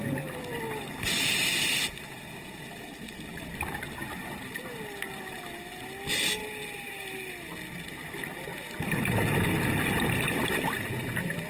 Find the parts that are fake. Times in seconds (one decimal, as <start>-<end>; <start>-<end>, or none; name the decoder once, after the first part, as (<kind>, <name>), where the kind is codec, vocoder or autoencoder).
none